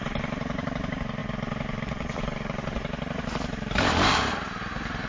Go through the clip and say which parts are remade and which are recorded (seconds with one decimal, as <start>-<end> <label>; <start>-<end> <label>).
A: 0.0-5.1 remade